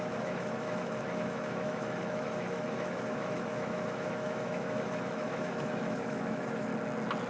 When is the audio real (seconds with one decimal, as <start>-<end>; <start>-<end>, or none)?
6.7-7.3